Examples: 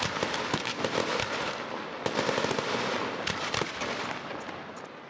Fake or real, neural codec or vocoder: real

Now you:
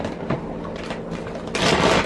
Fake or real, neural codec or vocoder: real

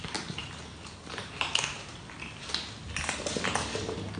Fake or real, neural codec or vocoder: real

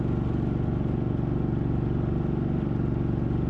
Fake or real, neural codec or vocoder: real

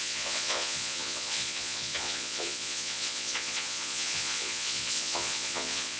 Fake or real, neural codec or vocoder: fake, vocoder, Vocos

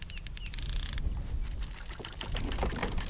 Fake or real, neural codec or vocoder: real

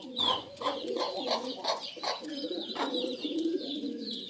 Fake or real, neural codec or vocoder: fake, vocoder, Vocos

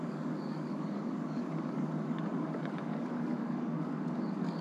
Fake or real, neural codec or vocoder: fake, codec, DAC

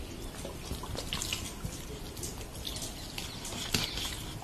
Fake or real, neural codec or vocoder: real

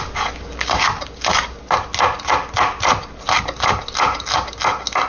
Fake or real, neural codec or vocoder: real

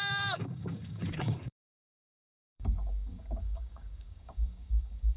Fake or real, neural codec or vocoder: fake, codec, DAC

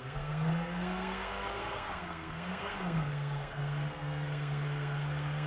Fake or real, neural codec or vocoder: fake, codec, SNAC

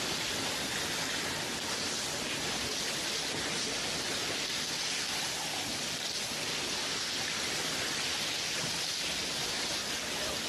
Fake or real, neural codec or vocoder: real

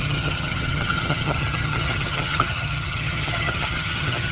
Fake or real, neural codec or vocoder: fake, vocoder, HiFi-GAN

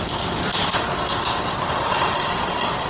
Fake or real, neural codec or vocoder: real